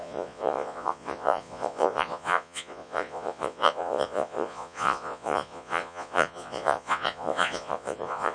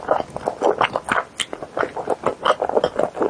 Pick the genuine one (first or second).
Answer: second